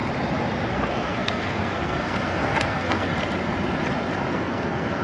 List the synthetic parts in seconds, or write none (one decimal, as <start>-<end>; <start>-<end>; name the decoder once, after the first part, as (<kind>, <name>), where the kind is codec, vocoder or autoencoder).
0.7-3.1 (codec, SNAC); 4.3-5.0